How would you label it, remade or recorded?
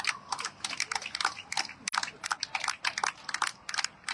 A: recorded